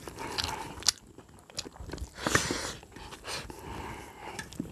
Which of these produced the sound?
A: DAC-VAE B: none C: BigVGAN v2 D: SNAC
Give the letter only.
B